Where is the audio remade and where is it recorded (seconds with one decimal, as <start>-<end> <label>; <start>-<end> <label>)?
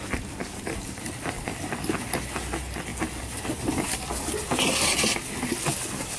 0.0-6.2 recorded